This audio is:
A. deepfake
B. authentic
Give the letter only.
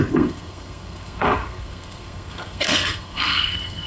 A